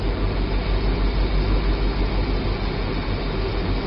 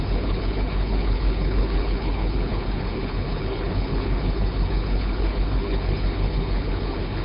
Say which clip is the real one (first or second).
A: first